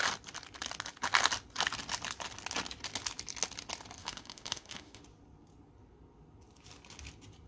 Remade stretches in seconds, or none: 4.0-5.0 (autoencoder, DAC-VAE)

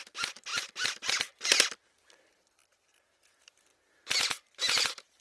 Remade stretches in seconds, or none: none

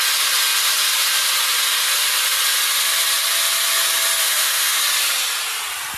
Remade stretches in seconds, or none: 4.2-4.8 (autoencoder, DAC-VAE)

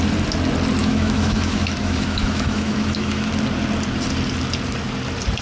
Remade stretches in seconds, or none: 0.8-3.3 (autoencoder, DAC-VAE)

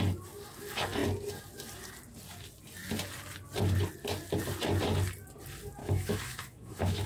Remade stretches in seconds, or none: 5.8-7.1 (autoencoder, DAC-VAE)

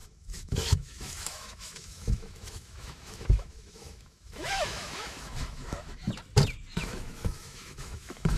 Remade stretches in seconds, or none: 0.0-6.0 (autoencoder, DAC-VAE); 6.8-8.4

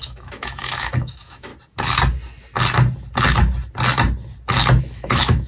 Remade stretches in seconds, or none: 0.0-1.5 (autoencoder, DAC-VAE); 4.8-5.5

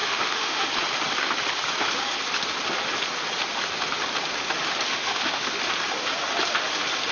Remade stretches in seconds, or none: 0.0-0.7 (autoencoder, DAC-VAE); 4.9-5.5